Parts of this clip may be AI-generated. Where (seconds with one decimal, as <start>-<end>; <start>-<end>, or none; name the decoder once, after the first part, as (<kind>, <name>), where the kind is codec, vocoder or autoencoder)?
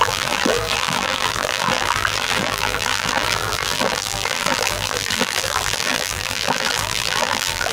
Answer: 0.0-7.7 (vocoder, BigVGAN v2)